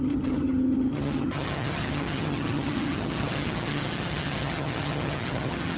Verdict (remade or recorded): remade